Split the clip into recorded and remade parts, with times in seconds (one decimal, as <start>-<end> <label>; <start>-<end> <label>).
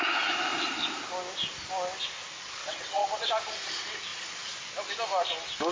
0.0-2.6 recorded; 2.6-3.3 remade; 3.3-5.7 recorded